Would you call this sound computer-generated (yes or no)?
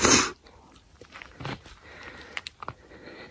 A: no